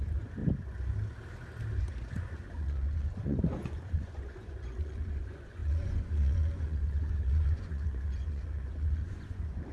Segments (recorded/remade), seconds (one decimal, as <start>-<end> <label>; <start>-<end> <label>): 0.0-0.4 remade; 0.4-1.8 recorded; 1.8-9.7 remade